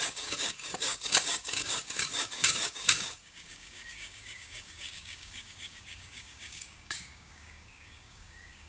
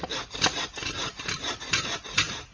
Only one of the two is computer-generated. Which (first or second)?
first